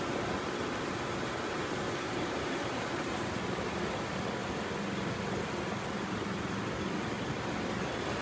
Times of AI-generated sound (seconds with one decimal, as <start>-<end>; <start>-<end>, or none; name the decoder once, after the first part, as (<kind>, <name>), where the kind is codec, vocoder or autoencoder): 0.6-3.8 (vocoder, BigVGAN v2)